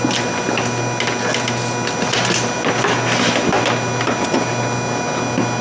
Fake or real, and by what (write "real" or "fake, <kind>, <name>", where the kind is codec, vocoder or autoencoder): real